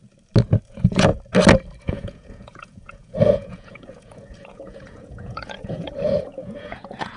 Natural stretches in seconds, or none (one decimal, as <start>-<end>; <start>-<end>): 0.0-0.7; 1.1-1.8